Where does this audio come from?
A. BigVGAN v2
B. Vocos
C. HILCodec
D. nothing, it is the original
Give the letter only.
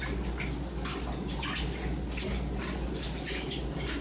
D